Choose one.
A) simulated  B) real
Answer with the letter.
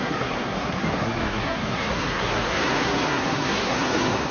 A